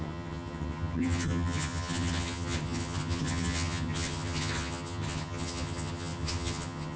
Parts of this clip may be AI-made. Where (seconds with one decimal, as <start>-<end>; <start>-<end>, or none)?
0.0-7.0

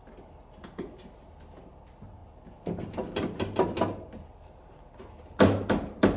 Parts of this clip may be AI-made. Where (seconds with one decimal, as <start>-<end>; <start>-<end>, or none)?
none

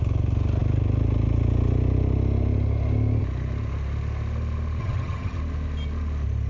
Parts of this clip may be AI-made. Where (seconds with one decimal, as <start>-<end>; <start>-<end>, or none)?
4.8-5.4

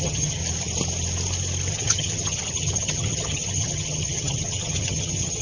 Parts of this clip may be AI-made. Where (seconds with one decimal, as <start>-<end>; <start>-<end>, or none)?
0.0-0.4; 1.7-5.4

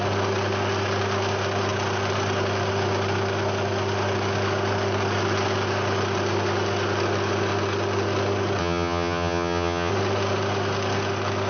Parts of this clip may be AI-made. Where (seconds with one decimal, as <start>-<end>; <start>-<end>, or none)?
8.6-9.9

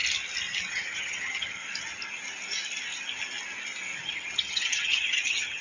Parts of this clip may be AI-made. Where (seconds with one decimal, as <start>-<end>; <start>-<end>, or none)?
0.7-1.6; 4.0-5.6